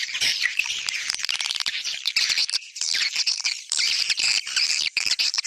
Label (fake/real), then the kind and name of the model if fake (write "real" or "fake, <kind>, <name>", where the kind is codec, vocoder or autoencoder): fake, vocoder, BigVGAN v2